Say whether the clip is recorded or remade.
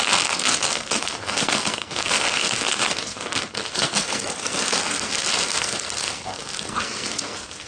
remade